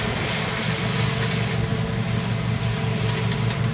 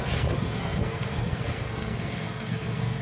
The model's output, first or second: second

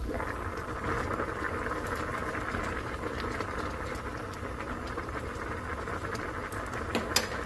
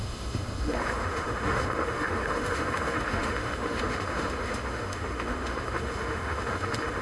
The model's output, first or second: second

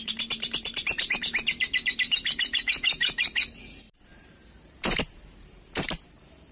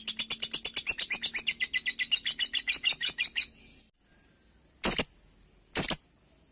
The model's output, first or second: first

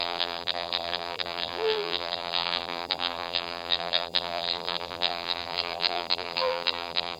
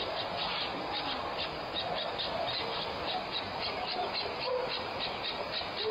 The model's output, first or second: first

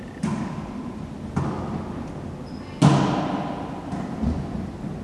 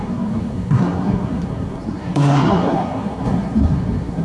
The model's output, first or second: second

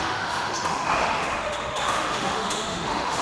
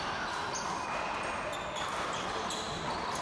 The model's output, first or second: first